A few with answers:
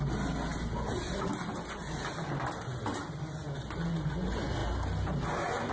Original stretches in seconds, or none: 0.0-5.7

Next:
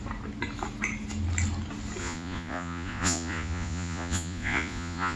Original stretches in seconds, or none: 0.0-2.0

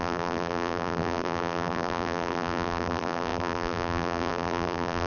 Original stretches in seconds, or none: none